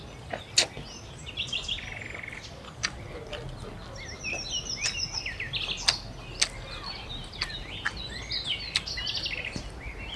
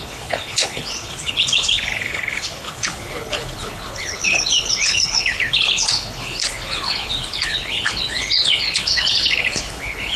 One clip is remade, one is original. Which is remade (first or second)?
second